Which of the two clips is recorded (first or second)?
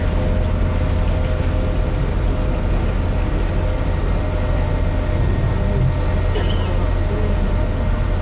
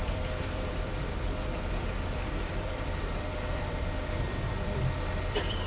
first